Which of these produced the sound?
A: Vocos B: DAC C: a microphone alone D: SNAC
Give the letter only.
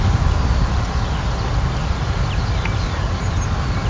C